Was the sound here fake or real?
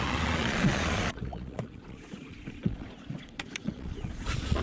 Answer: fake